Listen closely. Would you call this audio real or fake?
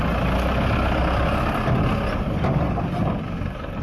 real